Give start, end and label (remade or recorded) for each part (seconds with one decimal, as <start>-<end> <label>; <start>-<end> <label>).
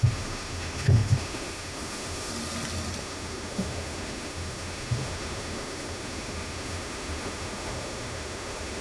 0.0-2.3 remade; 2.3-3.0 recorded; 3.0-8.8 remade